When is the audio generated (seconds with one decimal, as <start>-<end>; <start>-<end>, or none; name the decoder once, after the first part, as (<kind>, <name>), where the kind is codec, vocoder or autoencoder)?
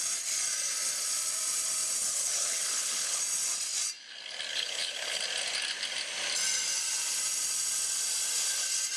2.0-3.2 (codec, HILCodec); 4.5-5.2